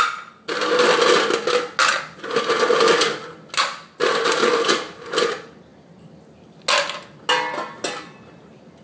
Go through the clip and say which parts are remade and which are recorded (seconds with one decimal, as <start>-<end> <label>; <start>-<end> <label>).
0.0-8.8 recorded